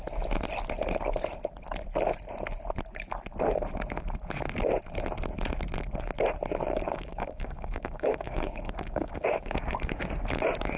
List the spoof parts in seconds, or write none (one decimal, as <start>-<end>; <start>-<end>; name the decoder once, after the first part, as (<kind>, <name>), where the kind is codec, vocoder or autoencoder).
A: 6.7-10.0 (codec, DAC)